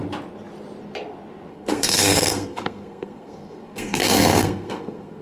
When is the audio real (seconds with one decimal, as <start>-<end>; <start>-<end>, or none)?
0.0-1.5